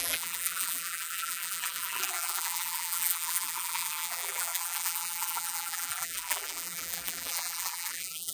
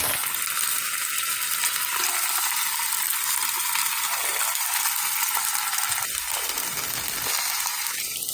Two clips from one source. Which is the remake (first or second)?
first